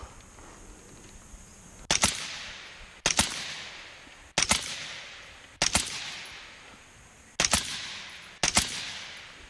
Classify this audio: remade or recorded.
recorded